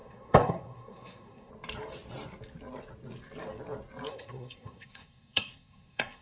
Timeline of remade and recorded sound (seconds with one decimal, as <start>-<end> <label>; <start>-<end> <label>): 0.0-1.5 remade; 1.5-4.1 recorded; 4.1-6.2 remade